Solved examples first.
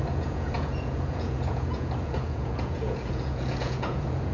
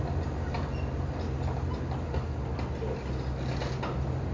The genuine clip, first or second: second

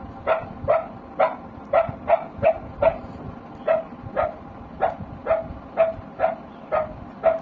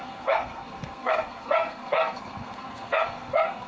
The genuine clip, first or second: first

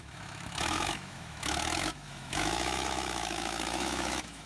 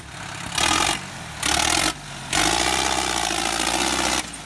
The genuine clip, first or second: second